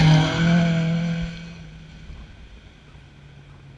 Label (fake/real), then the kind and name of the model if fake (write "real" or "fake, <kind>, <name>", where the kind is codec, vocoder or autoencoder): real